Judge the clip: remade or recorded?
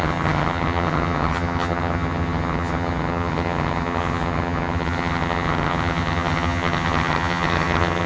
remade